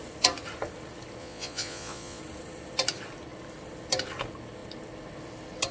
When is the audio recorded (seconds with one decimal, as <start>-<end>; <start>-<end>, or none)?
0.0-1.2; 2.2-5.7